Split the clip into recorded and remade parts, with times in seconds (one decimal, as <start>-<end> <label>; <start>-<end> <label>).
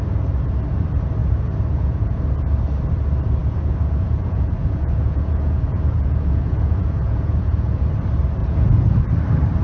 0.0-1.2 recorded; 1.2-2.2 remade; 2.2-3.4 recorded; 3.4-7.8 remade; 7.8-8.4 recorded; 8.4-9.0 remade; 9.0-9.6 recorded